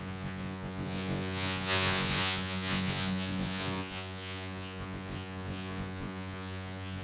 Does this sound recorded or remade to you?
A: remade